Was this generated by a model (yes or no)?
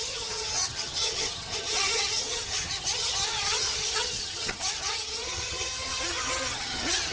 yes